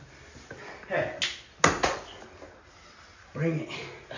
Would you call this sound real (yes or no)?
yes